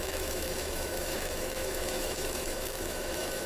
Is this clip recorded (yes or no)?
no